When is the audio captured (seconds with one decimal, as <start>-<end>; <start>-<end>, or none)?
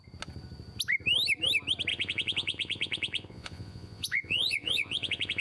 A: 0.0-1.9